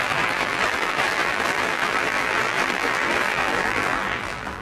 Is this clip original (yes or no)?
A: no